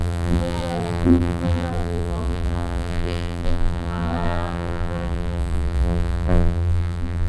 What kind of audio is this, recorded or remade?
remade